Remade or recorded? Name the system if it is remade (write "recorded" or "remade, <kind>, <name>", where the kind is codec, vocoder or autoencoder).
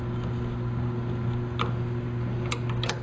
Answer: recorded